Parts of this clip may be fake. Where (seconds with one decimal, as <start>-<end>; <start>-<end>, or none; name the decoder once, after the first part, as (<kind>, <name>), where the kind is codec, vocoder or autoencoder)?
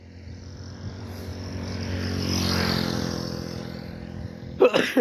none